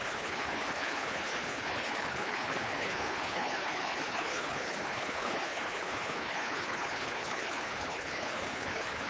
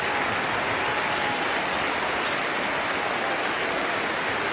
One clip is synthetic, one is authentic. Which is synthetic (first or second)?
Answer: first